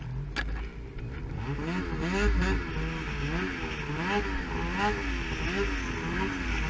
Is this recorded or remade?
recorded